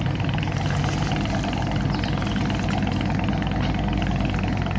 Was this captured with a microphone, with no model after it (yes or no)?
yes